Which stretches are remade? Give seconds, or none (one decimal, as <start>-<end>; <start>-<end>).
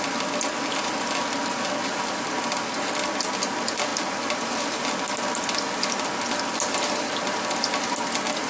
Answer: none